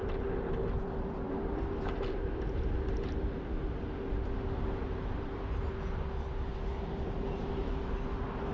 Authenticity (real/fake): real